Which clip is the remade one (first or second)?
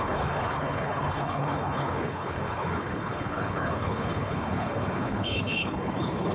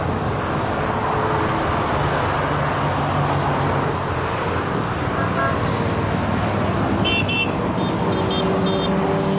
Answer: first